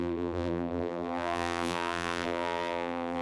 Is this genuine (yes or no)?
no